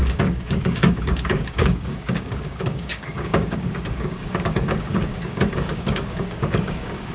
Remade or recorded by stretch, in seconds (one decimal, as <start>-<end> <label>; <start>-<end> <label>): 0.0-7.1 remade